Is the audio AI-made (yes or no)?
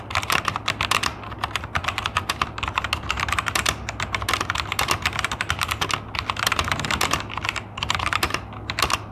no